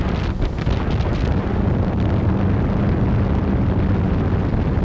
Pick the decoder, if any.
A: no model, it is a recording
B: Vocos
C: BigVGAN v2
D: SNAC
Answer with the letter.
A